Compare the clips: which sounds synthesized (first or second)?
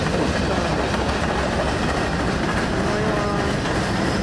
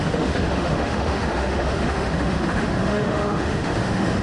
second